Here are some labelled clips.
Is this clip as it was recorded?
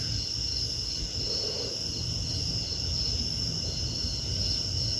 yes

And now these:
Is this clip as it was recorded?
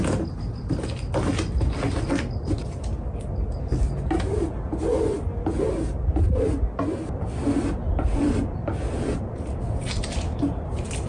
yes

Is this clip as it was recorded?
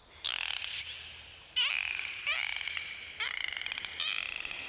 yes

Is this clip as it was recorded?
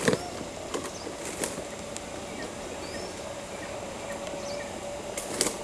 yes